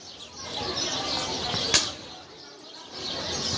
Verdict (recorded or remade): recorded